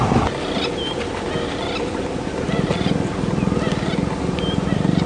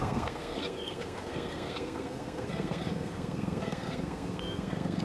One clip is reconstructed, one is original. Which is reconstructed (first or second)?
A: second